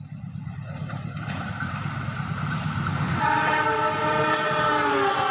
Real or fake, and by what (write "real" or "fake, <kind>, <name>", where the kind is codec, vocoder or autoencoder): fake, vocoder, BigVGAN v2